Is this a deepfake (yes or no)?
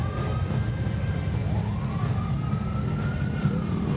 no